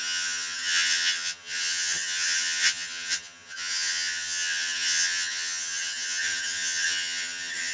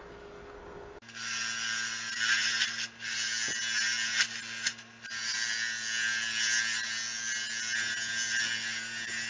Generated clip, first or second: first